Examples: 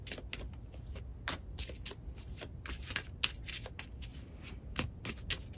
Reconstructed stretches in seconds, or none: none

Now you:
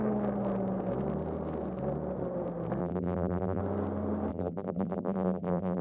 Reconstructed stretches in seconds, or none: 2.8-3.6 (vocoder, BigVGAN v2); 4.3-5.8